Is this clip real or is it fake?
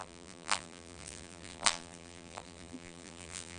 fake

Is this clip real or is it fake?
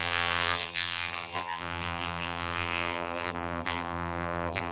fake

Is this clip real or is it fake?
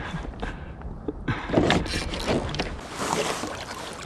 real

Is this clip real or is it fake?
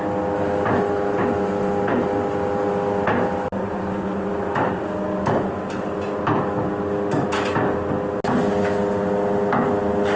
real